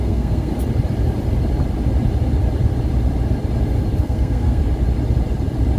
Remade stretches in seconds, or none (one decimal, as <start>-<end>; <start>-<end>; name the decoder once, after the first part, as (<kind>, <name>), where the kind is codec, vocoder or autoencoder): 0.0-0.5 (codec, SNAC); 4.0-4.6